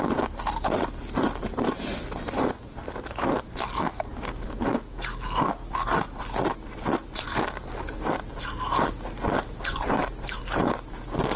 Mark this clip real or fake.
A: real